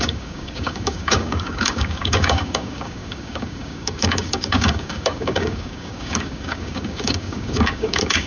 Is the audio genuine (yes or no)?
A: no